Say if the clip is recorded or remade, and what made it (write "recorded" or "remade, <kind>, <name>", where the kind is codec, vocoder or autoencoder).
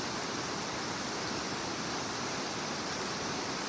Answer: recorded